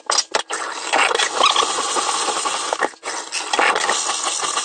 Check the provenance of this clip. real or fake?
real